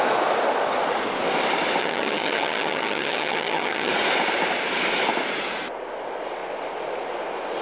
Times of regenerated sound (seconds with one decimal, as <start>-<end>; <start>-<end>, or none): 1.8-3.9